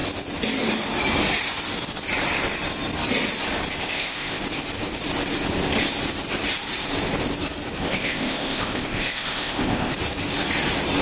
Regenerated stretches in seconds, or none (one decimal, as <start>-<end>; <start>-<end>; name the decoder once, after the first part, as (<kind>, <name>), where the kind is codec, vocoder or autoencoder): 3.8-4.4 (codec, ZipCodec); 7.8-9.9